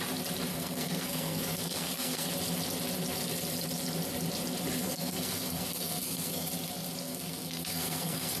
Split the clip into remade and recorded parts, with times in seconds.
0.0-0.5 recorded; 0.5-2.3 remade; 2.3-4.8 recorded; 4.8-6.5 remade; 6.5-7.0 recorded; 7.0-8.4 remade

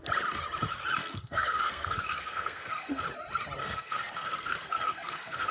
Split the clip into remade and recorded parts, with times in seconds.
0.0-1.0 recorded; 1.0-3.0 remade; 3.0-3.6 recorded; 3.6-5.5 remade

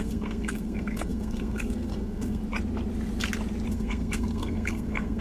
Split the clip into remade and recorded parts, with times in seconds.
0.0-2.4 remade; 2.4-3.7 recorded; 3.7-5.2 remade

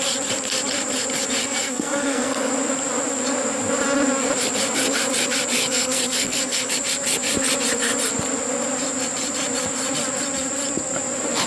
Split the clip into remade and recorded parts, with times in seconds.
0.0-1.4 recorded; 1.4-2.5 remade; 2.5-5.6 recorded; 5.6-6.7 remade; 6.7-11.5 recorded

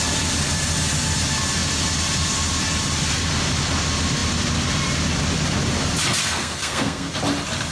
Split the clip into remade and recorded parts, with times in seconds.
0.0-6.2 recorded; 6.2-7.1 remade; 7.1-7.7 recorded

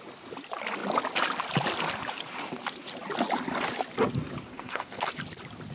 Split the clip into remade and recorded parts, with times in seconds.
0.0-4.5 recorded; 4.5-5.1 remade; 5.1-5.7 recorded

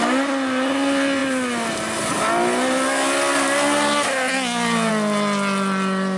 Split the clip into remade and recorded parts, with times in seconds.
0.0-6.2 recorded

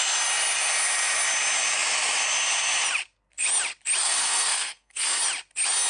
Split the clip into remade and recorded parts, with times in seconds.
0.0-4.0 recorded; 4.0-5.2 remade; 5.2-5.9 recorded